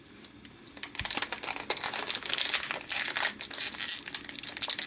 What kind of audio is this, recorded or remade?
recorded